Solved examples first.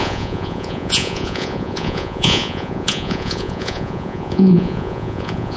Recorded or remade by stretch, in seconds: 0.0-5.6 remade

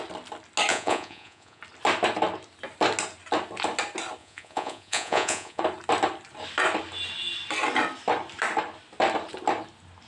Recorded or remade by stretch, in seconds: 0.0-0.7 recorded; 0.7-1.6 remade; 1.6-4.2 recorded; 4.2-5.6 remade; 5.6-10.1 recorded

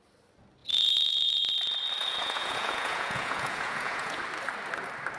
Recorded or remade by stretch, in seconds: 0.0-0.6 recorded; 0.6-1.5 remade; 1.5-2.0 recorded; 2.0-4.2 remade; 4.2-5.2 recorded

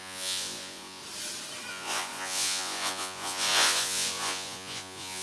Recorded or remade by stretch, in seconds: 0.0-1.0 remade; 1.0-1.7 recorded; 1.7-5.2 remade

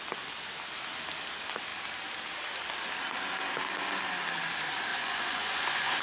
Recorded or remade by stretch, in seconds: 0.0-4.9 recorded; 4.9-6.0 remade

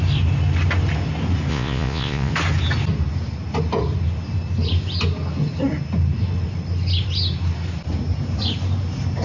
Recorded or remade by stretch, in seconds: 0.0-1.5 recorded; 1.5-2.3 remade; 2.3-9.2 recorded

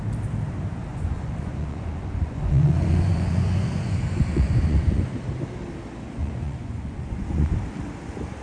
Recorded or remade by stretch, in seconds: 0.0-0.9 recorded; 0.9-5.0 remade; 5.0-6.2 recorded; 6.2-7.5 remade; 7.5-8.4 recorded